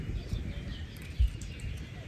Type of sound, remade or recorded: recorded